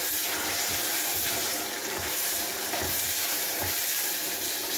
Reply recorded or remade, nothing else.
remade